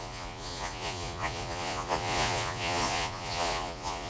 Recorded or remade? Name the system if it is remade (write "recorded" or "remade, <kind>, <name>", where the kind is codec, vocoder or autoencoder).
remade, vocoder, Vocos